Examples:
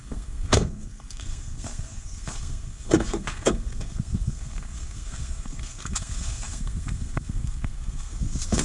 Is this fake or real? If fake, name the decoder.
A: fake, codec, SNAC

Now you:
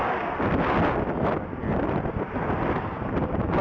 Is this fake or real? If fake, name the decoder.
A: real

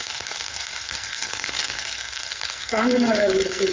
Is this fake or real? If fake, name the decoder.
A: fake, codec, SNAC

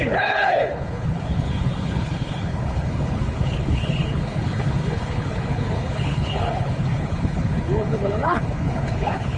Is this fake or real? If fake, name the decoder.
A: fake, codec, HILCodec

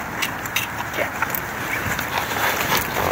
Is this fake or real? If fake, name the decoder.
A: fake, vocoder, BigVGAN v2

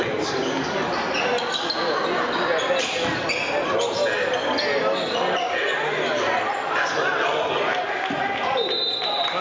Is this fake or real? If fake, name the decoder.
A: real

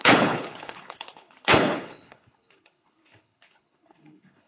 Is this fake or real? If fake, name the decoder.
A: fake, codec, HILCodec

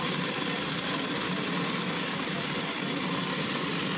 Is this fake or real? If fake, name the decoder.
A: real